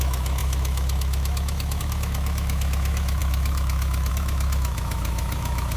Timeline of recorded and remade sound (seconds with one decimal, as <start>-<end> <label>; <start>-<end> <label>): 0.0-5.8 remade